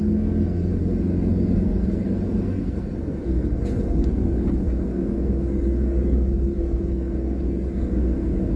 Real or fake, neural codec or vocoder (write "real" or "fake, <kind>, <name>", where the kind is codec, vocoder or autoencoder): fake, codec, SNAC